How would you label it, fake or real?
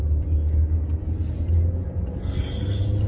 real